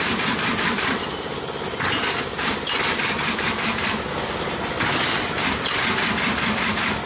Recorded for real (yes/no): yes